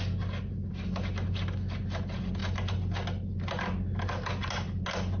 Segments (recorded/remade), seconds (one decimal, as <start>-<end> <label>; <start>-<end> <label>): 0.0-5.2 recorded